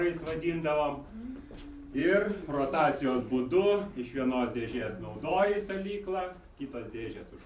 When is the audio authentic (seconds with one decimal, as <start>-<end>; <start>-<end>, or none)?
0.0-2.0; 3.2-5.3; 6.2-7.5